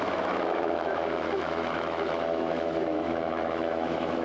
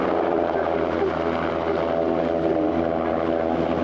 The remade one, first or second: first